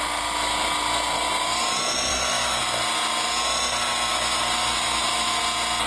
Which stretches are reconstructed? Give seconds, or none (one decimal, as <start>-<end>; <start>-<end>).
2.1-2.6; 4.1-5.4